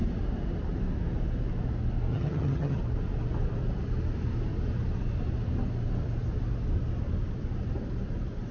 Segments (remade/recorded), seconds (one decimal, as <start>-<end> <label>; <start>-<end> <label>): 0.0-2.1 recorded; 2.1-2.8 remade; 2.8-8.5 recorded